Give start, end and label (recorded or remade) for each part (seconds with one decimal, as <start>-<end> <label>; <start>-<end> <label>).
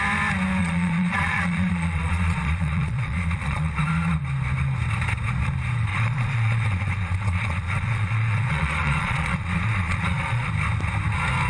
0.0-0.6 recorded; 0.6-3.8 remade; 3.8-5.9 recorded; 5.9-10.5 remade; 10.5-11.5 recorded